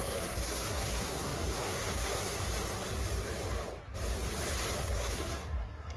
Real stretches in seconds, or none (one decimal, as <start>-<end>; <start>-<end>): 2.4-4.8